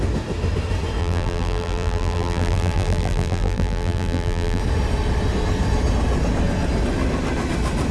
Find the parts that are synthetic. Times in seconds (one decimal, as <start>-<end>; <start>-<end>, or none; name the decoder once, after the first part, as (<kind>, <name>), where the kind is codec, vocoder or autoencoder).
1.0-4.6 (vocoder, BigVGAN v2)